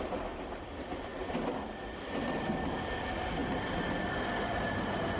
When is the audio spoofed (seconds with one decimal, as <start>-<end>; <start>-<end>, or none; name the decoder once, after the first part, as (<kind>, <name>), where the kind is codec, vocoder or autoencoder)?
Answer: none